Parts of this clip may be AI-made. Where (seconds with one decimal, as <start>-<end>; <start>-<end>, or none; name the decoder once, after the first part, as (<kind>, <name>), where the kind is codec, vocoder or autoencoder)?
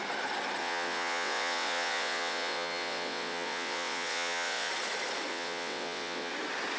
0.6-4.7 (vocoder, WaveNeXt); 5.3-6.3